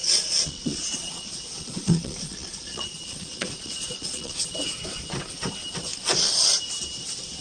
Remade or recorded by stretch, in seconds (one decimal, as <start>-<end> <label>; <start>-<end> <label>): 0.0-4.4 remade; 4.4-7.4 recorded